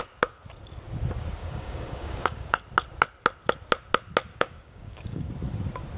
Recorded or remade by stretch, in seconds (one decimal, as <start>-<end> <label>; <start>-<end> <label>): 0.0-1.4 recorded; 1.4-2.6 remade; 2.6-4.3 recorded; 4.3-5.3 remade; 5.3-6.0 recorded